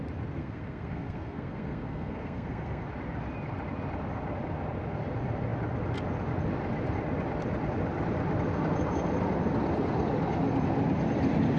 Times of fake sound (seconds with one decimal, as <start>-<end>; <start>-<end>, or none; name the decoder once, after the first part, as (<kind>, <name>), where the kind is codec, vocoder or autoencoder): 0.4-2.8 (codec, SNAC)